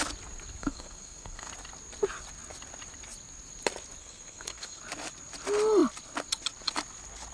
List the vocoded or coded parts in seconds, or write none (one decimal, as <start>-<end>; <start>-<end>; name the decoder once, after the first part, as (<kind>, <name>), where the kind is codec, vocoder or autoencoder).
0.6-1.5 (codec, SNAC); 4.0-4.8